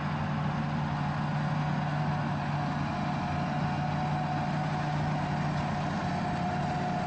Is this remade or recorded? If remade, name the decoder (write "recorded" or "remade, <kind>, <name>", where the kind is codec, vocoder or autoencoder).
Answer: recorded